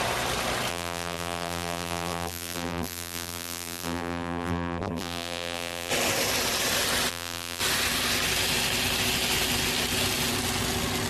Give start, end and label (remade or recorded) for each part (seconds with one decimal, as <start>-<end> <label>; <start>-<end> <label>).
0.0-0.7 recorded; 0.7-5.9 remade; 5.9-7.1 recorded; 7.1-7.6 remade; 7.6-11.1 recorded

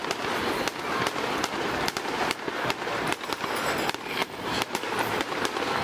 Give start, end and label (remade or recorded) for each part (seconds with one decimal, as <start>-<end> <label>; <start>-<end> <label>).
0.0-4.2 recorded; 4.2-5.2 remade; 5.2-5.8 recorded

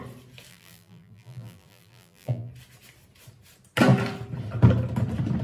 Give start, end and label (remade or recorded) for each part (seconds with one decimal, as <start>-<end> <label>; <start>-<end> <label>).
0.0-0.5 recorded; 0.5-2.5 remade; 2.5-5.4 recorded

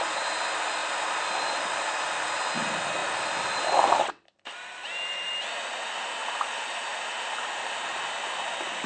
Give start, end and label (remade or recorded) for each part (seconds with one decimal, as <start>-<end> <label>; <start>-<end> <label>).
0.0-0.8 recorded; 0.8-2.3 remade; 2.3-3.0 recorded; 3.0-4.1 remade; 4.1-6.2 recorded; 6.2-8.2 remade; 8.2-8.9 recorded

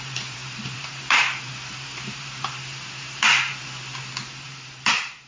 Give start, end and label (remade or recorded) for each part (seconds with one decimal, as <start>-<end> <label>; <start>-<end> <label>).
0.0-3.5 remade; 3.5-4.2 recorded; 4.2-5.3 remade

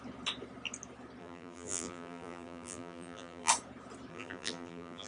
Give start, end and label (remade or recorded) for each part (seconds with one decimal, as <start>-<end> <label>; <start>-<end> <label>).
0.0-1.2 recorded; 1.2-3.5 remade; 3.5-4.1 recorded; 4.1-5.1 remade

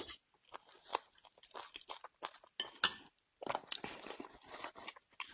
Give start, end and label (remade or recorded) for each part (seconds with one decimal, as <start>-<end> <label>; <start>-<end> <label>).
0.0-0.9 recorded; 0.9-2.0 remade; 2.0-2.9 recorded; 2.9-3.6 remade; 3.6-5.3 recorded

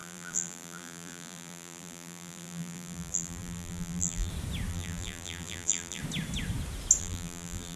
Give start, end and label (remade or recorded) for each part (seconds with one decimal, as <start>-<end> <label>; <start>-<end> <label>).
0.0-4.3 remade; 4.3-4.7 recorded; 4.7-6.0 remade; 6.0-7.0 recorded; 7.0-7.8 remade